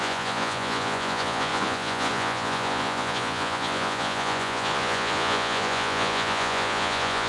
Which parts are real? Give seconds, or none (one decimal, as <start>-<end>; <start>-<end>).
none